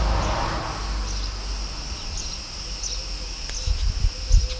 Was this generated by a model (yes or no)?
no